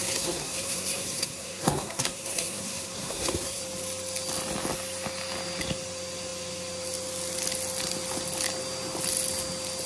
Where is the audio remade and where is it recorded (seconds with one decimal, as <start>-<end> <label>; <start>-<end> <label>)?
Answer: 0.0-3.6 remade; 3.6-9.9 recorded